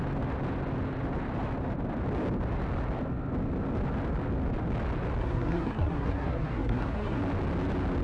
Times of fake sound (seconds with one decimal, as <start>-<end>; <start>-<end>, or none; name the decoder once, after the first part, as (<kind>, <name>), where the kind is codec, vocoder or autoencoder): 5.2-7.2 (codec, SNAC)